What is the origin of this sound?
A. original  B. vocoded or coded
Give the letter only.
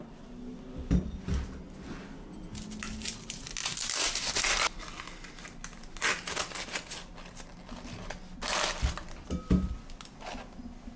A